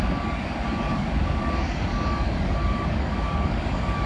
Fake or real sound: fake